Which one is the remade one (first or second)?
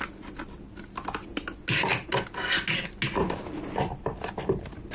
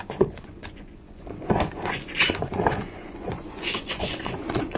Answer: second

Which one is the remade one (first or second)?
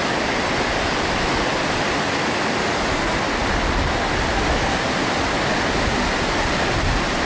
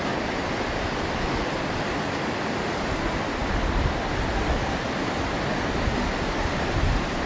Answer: second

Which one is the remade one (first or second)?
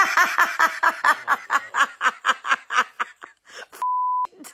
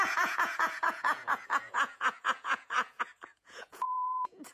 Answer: second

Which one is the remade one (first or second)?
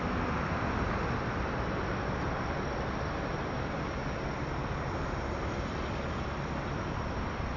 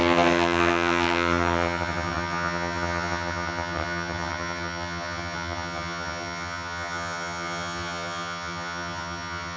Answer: second